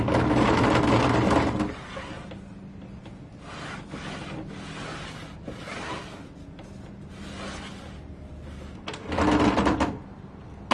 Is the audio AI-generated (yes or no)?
no